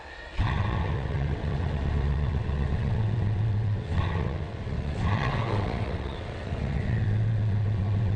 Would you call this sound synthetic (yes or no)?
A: yes